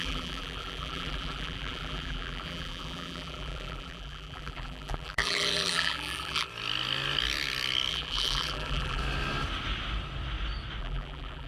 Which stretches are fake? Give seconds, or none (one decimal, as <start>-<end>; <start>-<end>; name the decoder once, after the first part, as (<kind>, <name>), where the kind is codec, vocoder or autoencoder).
0.0-6.5 (vocoder, BigVGAN v2); 7.9-9.0; 10.8-11.5